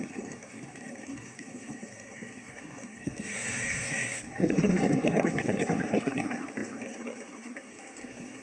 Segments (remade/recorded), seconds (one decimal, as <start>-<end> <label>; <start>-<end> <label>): 0.0-8.4 remade